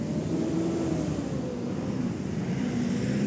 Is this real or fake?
real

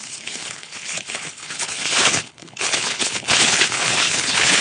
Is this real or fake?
fake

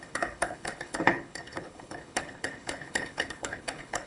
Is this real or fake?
fake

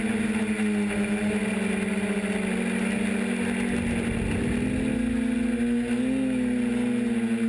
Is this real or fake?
real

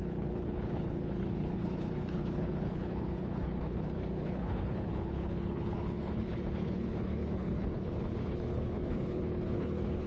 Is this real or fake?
fake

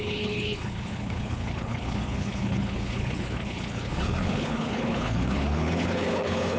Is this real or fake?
fake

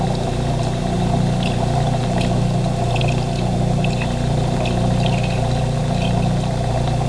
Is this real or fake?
real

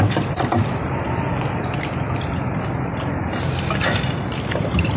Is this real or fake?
real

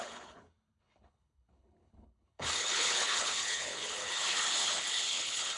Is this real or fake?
fake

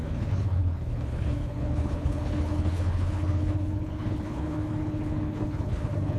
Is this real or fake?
fake